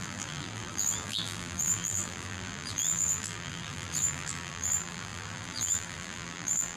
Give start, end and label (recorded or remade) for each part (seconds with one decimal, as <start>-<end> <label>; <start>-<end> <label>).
0.0-6.8 remade

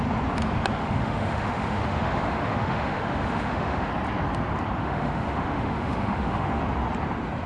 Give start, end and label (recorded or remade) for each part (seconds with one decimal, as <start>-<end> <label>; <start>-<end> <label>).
0.0-0.8 recorded; 0.8-3.9 remade; 3.9-4.8 recorded; 4.8-6.6 remade; 6.6-7.5 recorded